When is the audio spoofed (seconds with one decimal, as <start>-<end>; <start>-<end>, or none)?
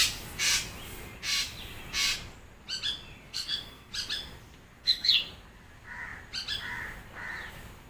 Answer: 3.3-3.9; 4.8-5.3